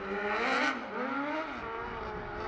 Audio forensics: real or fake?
real